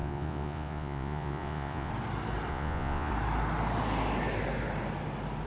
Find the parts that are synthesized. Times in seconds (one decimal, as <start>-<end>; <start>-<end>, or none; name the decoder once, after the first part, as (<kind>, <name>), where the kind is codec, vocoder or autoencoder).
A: 0.0-1.9 (vocoder, Vocos); 2.5-3.1